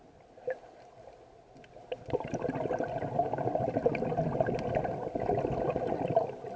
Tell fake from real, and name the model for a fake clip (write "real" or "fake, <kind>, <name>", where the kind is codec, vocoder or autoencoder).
real